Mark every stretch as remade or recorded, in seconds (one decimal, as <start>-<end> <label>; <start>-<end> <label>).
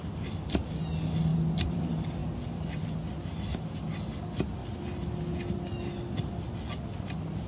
0.0-1.3 recorded; 1.3-1.8 remade; 1.8-7.5 recorded